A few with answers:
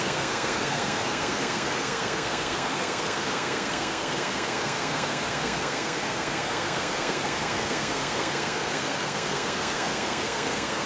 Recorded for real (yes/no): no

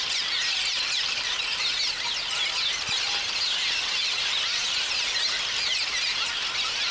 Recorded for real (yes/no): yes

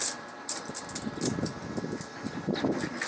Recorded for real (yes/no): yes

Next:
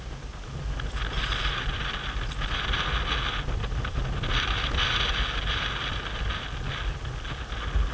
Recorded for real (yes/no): yes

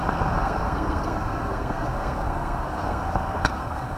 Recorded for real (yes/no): no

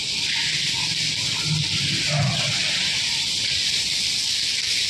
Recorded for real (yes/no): yes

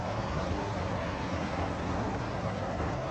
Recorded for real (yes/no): no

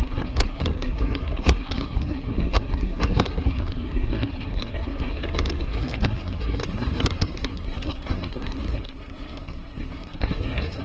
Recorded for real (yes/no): no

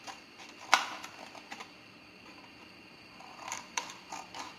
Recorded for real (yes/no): yes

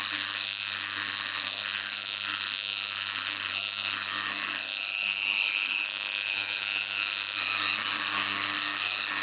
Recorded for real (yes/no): no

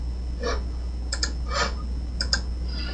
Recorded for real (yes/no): yes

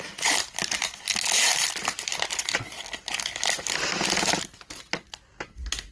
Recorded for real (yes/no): yes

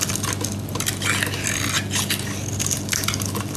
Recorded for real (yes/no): yes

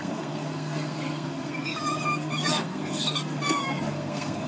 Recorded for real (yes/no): no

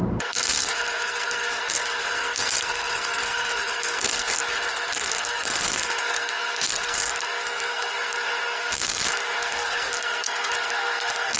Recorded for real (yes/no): no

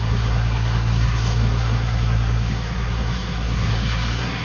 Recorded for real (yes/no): no